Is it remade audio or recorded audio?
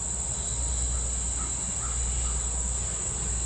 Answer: recorded